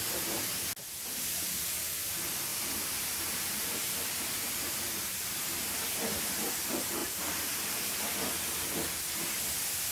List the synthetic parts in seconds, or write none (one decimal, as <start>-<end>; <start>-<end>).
2.5-5.8; 7.0-8.0